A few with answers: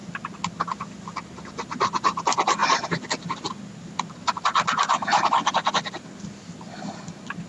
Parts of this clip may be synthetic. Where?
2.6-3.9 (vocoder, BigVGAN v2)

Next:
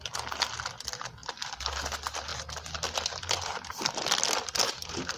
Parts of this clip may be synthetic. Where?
none

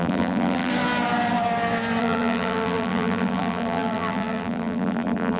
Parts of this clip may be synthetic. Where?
0.0-0.7 (vocoder, BigVGAN v2); 2.0-5.4

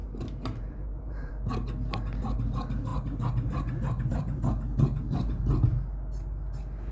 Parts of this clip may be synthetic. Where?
0.0-1.3 (vocoder, BigVGAN v2)

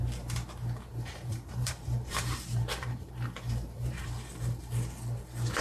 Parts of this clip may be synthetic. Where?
0.9-4.3 (vocoder, BigVGAN v2)